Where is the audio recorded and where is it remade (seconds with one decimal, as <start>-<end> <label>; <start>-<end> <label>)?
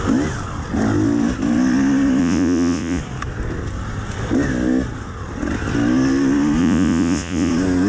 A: 0.0-2.2 recorded; 2.2-3.0 remade; 3.0-6.6 recorded; 6.6-7.5 remade; 7.5-7.9 recorded